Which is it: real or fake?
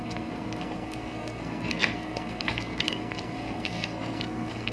fake